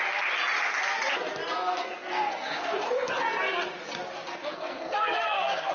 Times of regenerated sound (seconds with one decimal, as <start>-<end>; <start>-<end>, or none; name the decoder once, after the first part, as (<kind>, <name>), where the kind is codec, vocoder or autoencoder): 1.7-3.1 (codec, SNAC); 4.4-5.7